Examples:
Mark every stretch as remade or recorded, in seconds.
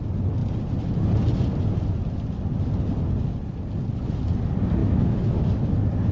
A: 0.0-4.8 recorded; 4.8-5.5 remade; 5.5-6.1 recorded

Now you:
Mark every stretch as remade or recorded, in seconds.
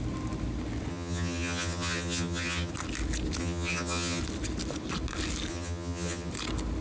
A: 0.0-0.9 recorded; 0.9-2.7 remade; 2.7-3.4 recorded; 3.4-4.2 remade; 4.2-5.5 recorded; 5.5-6.3 remade; 6.3-6.8 recorded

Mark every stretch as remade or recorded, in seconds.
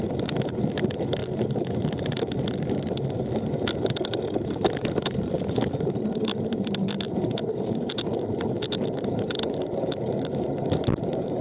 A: 0.0-1.2 remade; 1.2-1.7 recorded; 1.7-11.4 remade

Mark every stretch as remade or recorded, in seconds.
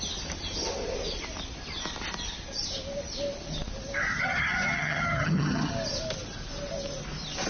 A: 0.0-4.1 recorded; 4.1-5.7 remade; 5.7-7.5 recorded